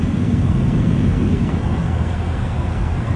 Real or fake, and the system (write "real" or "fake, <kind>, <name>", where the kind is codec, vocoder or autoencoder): fake, codec, SNAC